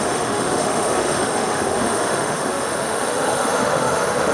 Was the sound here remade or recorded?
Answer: remade